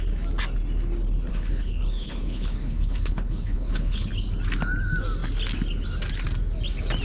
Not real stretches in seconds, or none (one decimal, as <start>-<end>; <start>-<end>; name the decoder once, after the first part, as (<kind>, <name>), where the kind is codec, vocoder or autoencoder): 1.3-4.1 (codec, HILCodec)